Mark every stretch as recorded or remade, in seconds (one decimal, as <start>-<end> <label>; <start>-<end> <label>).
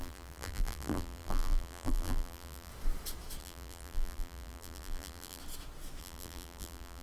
0.0-2.7 remade; 2.7-3.4 recorded; 3.4-5.4 remade; 5.4-6.0 recorded; 6.0-7.0 remade